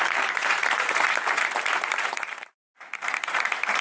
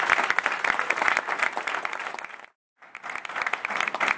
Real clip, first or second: second